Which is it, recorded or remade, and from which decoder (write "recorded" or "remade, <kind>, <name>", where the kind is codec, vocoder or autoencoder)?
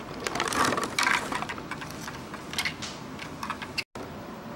recorded